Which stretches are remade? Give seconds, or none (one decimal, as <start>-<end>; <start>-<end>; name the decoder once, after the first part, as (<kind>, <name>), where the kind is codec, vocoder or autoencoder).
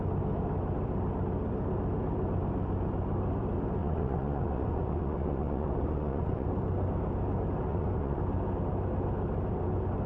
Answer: 3.8-6.5 (vocoder, Vocos); 7.7-8.2